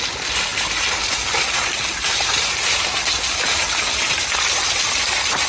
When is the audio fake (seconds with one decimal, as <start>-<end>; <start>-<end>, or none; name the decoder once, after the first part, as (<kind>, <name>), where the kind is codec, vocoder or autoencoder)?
none